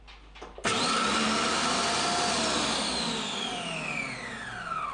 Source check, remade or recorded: recorded